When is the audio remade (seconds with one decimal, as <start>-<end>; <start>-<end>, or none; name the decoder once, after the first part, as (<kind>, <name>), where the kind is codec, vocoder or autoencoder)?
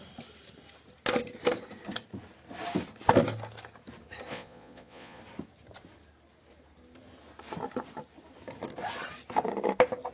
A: 4.3-5.2 (vocoder, Vocos)